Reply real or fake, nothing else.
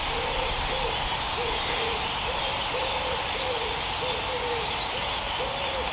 real